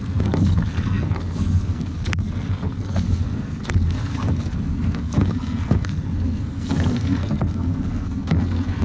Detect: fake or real fake